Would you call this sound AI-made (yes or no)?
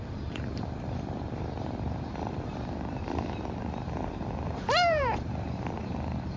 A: yes